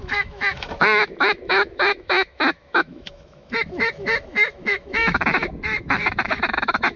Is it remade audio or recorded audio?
remade